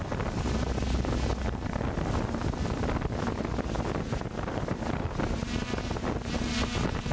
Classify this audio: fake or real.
real